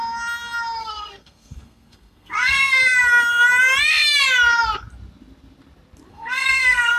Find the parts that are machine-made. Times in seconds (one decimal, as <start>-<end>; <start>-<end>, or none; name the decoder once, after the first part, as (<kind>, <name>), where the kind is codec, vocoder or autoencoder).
0.8-2.7 (codec, SNAC); 6.1-7.0